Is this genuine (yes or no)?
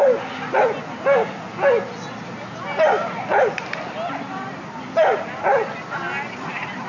yes